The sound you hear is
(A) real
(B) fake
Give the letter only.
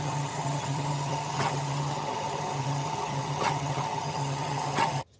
B